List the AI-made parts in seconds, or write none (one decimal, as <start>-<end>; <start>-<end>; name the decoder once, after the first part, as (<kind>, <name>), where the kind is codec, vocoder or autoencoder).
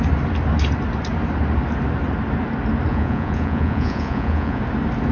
2.9-4.6 (vocoder, Vocos)